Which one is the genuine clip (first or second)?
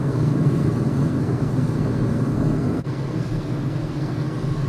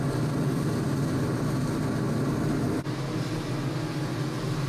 second